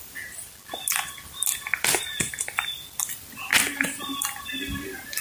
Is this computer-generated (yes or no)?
no